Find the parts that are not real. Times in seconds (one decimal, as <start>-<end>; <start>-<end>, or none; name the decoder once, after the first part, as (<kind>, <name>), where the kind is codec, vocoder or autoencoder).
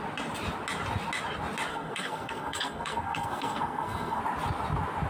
1.7-4.2 (codec, SNAC)